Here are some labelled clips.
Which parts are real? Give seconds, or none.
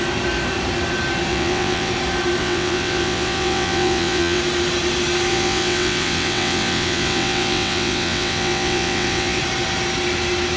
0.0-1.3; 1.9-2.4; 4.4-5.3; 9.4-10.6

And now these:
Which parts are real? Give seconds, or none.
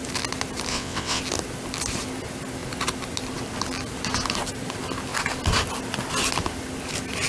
0.0-0.7; 1.2-7.3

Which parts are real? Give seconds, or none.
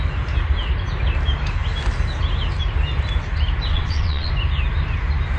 0.0-3.7; 4.3-5.4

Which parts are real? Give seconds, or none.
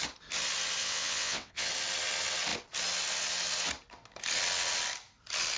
0.0-0.8; 1.7-5.6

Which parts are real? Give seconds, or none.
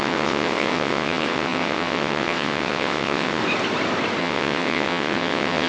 3.4-4.2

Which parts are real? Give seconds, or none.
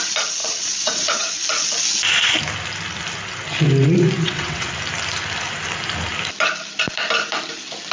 0.0-0.4; 1.4-4.2; 4.7-7.9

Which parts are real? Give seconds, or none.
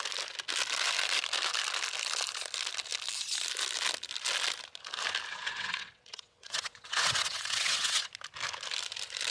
0.0-5.3; 8.1-9.3